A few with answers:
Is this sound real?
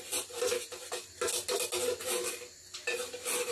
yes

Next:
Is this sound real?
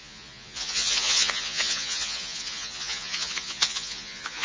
no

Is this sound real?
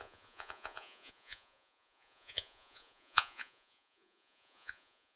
no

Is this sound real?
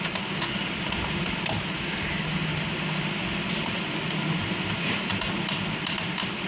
yes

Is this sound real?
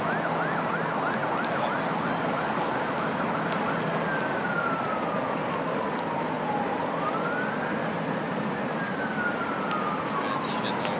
yes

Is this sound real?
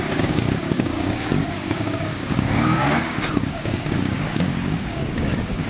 no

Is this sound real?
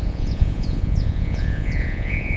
no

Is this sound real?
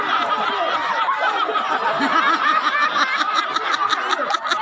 yes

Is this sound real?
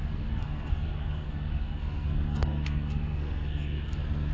no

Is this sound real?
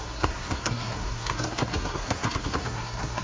no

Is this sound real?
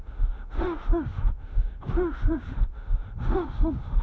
no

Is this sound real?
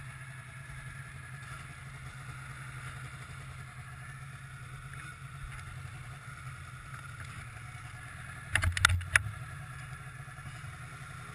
yes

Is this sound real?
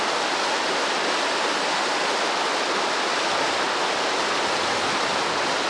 yes